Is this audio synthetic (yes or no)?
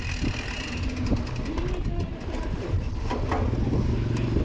no